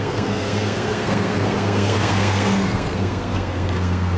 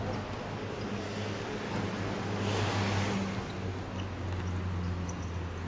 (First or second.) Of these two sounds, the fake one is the first